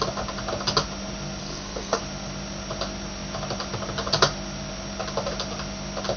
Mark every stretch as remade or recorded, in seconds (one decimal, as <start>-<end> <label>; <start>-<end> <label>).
0.0-1.4 recorded; 1.4-2.0 remade; 2.0-6.2 recorded